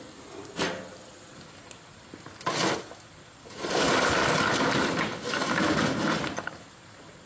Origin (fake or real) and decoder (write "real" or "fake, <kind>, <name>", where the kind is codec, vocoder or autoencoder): real